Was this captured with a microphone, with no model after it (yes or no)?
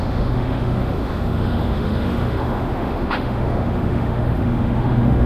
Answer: no